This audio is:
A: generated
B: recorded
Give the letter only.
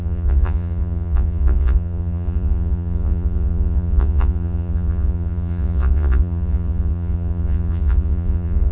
A